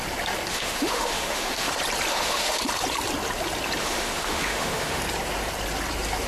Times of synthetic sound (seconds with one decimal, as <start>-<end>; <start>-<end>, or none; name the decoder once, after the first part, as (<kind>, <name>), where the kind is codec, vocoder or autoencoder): 0.5-1.7 (autoencoder, DAC-VAE); 2.1-2.6; 3.8-5.0